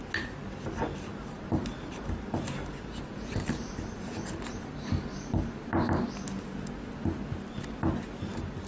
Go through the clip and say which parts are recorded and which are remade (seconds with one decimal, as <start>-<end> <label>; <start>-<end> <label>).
0.0-1.1 recorded; 1.1-6.2 remade; 6.2-8.7 recorded